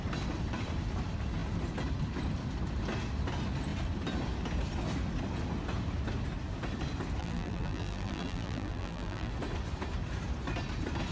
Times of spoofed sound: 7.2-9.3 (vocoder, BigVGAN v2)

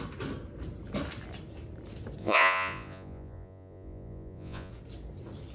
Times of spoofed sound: 2.2-4.7 (vocoder, Vocos)

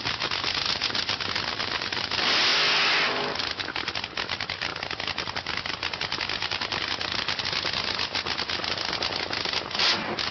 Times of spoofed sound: none

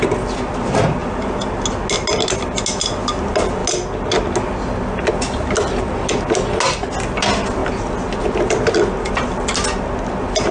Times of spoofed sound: none